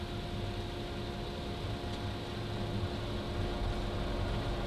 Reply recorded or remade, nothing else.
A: recorded